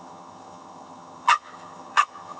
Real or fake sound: fake